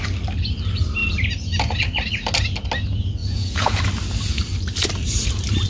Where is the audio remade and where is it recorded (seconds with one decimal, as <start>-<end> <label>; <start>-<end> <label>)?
0.0-3.2 recorded; 3.2-3.8 remade; 3.8-5.7 recorded